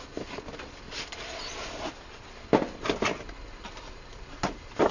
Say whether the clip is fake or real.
real